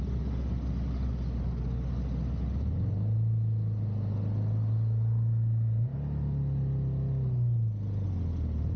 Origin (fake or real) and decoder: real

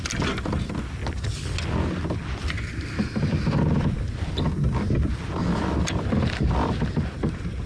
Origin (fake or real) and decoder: real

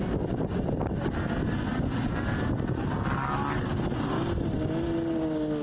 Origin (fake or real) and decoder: real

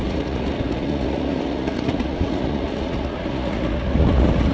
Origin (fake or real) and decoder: fake, vocoder, Vocos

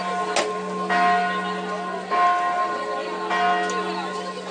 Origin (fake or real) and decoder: real